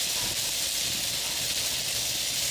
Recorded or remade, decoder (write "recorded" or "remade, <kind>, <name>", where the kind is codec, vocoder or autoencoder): recorded